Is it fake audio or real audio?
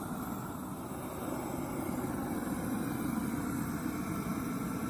real